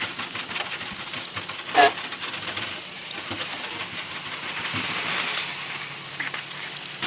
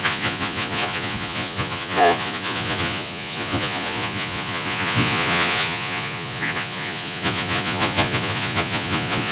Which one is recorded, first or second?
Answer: first